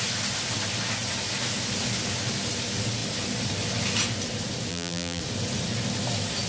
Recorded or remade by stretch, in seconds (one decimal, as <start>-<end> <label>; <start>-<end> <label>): 0.0-4.7 recorded; 4.7-5.2 remade; 5.2-6.5 recorded